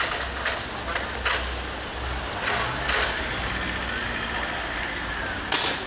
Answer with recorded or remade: recorded